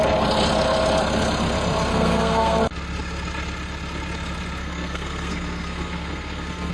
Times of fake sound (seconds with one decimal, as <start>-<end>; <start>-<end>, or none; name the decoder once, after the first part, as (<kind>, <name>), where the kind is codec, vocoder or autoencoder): 1.9-2.6 (codec, SNAC); 4.6-6.7